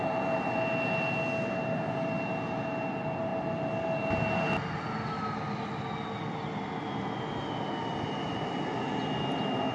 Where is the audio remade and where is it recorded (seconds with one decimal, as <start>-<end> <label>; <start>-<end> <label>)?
0.0-9.7 recorded